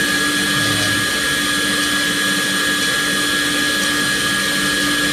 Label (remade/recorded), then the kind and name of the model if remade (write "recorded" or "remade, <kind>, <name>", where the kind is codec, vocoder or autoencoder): recorded